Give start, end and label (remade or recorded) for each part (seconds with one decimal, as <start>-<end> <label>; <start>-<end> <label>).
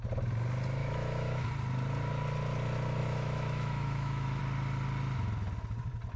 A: 0.0-0.8 recorded; 0.8-1.5 remade; 1.5-3.0 recorded; 3.0-4.4 remade; 4.4-6.2 recorded